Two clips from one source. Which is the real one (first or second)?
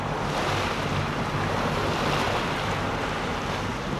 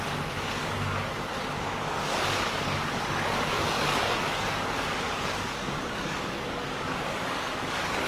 first